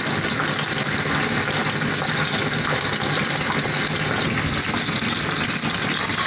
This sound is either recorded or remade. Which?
recorded